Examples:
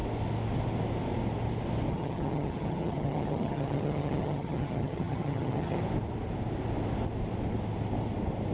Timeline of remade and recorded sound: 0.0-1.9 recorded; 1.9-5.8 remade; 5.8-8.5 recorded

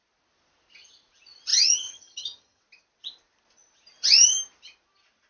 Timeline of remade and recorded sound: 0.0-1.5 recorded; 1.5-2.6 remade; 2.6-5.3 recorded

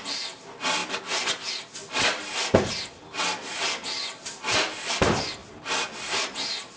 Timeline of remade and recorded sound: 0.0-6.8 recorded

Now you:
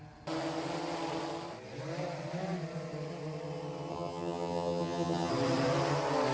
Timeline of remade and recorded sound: 0.0-3.9 recorded; 3.9-5.3 remade; 5.3-6.3 recorded

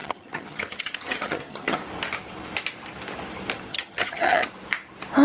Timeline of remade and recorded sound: 0.0-1.8 remade; 1.8-3.7 recorded; 3.7-4.5 remade; 4.5-5.2 recorded

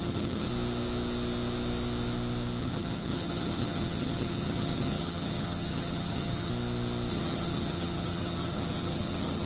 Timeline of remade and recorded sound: 0.0-0.5 remade; 0.5-2.6 recorded; 2.6-6.5 remade; 6.5-7.1 recorded; 7.1-9.5 remade

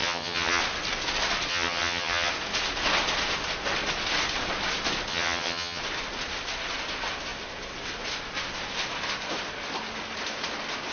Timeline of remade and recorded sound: 0.0-0.6 remade; 0.6-1.5 recorded; 1.5-2.3 remade; 2.3-5.1 recorded; 5.1-5.8 remade; 5.8-10.9 recorded

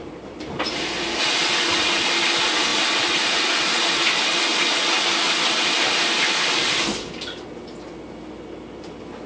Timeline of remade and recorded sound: 0.0-9.3 recorded